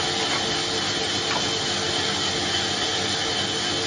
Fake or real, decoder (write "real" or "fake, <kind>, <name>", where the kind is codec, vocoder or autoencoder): real